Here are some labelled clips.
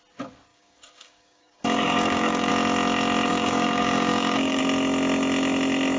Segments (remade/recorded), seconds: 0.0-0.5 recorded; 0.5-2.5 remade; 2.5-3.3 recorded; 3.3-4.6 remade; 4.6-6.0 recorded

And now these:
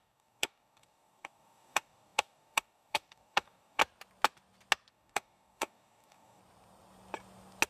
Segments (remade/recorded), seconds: 0.0-3.8 remade; 3.8-4.9 recorded; 4.9-6.4 remade; 6.4-7.7 recorded